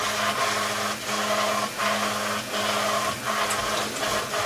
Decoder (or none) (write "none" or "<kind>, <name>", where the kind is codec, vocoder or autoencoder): none